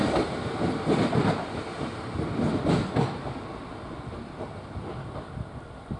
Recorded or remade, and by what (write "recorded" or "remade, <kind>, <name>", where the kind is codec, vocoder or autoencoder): recorded